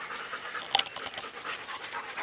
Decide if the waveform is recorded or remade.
recorded